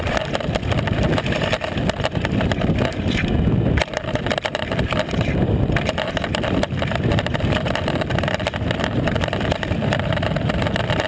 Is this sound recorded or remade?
remade